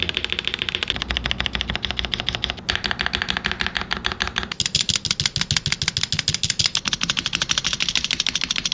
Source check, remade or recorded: recorded